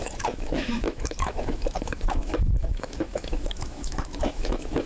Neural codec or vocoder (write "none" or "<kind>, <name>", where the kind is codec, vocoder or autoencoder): autoencoder, DAC-VAE